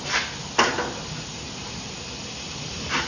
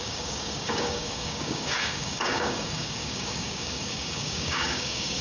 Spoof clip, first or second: second